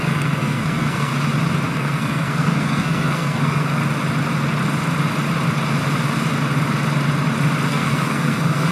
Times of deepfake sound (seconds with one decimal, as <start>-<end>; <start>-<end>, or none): 0.0-1.1; 1.7-3.8; 7.7-8.7